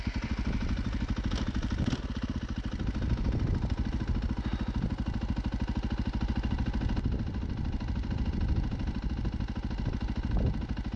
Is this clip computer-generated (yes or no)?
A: no